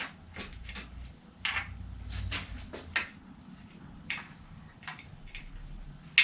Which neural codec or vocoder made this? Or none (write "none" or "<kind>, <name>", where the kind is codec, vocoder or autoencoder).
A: none